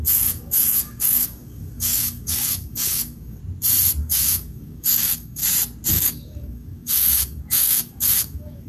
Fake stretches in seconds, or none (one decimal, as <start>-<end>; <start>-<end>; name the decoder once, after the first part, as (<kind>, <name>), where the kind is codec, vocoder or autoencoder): 0.0-3.4 (codec, DAC); 4.0-5.4; 5.9-8.7